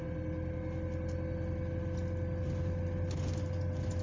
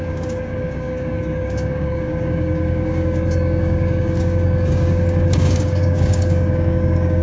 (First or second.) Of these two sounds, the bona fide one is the first